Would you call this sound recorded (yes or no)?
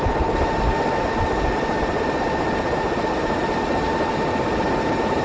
yes